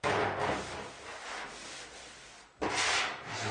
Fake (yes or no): no